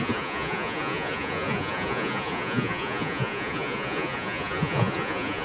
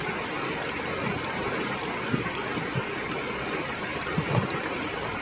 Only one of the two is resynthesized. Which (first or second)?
first